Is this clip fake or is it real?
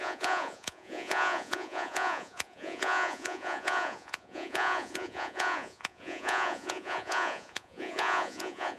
fake